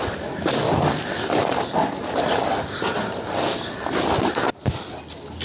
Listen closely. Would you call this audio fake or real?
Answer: real